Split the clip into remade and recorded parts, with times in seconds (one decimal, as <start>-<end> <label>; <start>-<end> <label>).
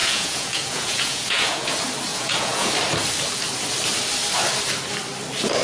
0.0-1.7 remade; 1.7-2.1 recorded; 2.1-2.7 remade; 2.7-5.6 recorded